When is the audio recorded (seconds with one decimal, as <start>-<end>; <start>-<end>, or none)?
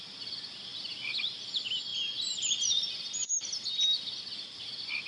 0.0-5.1